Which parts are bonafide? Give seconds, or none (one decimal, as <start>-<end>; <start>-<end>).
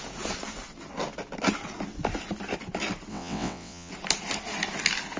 0.0-3.1; 3.9-5.2